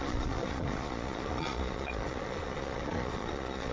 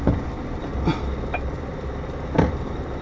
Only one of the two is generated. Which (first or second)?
first